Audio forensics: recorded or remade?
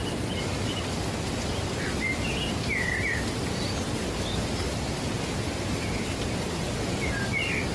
recorded